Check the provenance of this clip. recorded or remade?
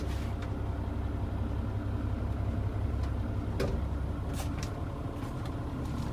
recorded